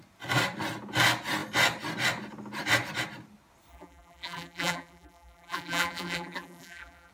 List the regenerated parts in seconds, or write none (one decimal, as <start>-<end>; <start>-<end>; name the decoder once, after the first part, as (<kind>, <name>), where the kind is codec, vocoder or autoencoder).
3.7-7.1 (vocoder, BigVGAN v2)